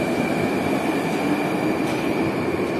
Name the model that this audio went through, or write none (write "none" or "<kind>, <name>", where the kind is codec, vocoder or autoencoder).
none